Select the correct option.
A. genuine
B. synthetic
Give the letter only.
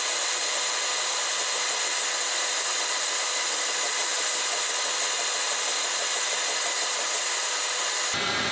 A